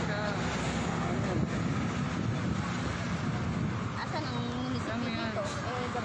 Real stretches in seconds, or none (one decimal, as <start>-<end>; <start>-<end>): 0.0-6.0